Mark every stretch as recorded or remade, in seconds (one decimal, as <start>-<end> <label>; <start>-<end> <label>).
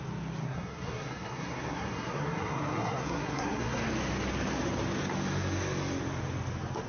0.0-0.4 recorded; 0.4-3.8 remade; 3.8-6.9 recorded